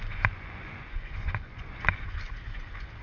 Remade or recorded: remade